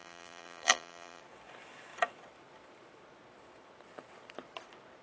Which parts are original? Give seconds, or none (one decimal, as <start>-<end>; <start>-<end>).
1.2-5.0